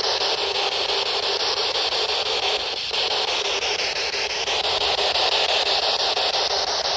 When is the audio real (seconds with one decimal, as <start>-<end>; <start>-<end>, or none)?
0.0-7.0